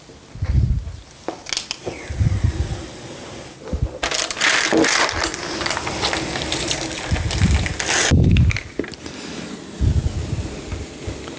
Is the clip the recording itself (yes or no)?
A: yes